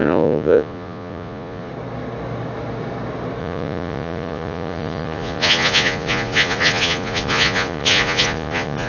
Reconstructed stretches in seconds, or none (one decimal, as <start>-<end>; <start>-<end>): 0.0-1.7; 3.4-8.9